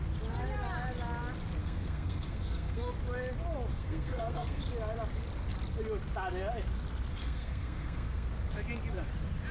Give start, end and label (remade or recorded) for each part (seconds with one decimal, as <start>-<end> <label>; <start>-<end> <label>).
0.0-1.6 recorded; 1.6-2.9 remade; 2.9-3.7 recorded; 3.7-4.6 remade; 4.6-7.1 recorded; 7.1-8.3 remade; 8.3-9.5 recorded